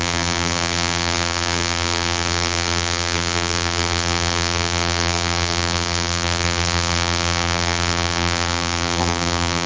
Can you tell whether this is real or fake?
fake